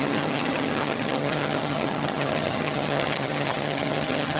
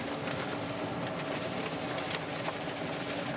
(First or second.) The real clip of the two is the second